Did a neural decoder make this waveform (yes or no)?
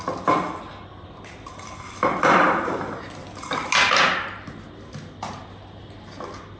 no